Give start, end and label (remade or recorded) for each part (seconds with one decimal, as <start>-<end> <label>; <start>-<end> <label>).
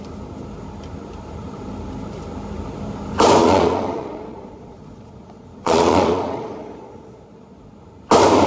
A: 0.0-3.4 recorded; 3.4-7.8 remade; 7.8-8.5 recorded